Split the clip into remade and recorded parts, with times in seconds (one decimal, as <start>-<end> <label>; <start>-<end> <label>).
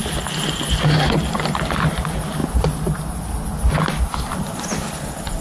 0.0-1.2 remade; 1.2-2.4 recorded; 2.4-4.3 remade; 4.3-5.4 recorded